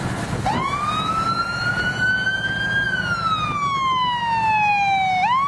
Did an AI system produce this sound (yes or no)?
no